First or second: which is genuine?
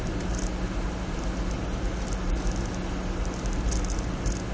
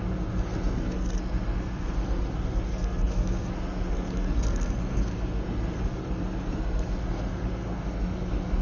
first